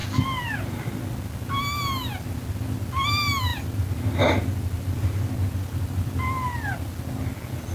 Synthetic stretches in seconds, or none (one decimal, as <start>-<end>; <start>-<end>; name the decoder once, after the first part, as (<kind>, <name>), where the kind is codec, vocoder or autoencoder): none